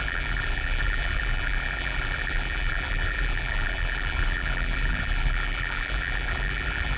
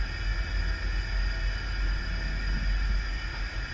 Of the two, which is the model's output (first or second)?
first